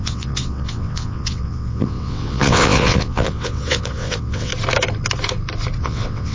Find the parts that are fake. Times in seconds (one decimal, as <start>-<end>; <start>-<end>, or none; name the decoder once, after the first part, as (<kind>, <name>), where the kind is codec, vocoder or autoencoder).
0.0-4.5 (vocoder, WaveNeXt); 5.8-6.3